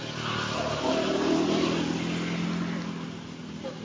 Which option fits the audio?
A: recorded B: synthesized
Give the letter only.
A